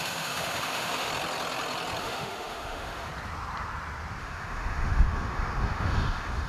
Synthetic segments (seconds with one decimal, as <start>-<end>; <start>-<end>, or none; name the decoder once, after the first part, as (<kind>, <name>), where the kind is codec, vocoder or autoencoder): 0.0-1.1 (autoencoder, DAC-VAE); 2.0-3.1; 4.2-6.5